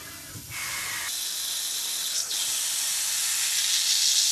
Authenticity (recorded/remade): recorded